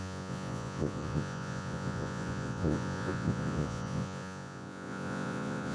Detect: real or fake fake